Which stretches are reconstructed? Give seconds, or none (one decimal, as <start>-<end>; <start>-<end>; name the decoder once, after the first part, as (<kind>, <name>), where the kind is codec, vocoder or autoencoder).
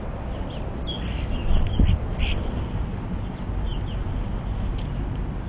none